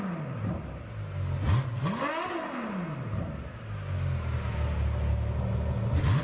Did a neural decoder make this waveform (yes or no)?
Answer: no